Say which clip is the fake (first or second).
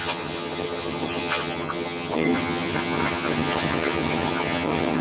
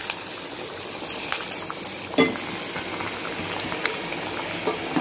first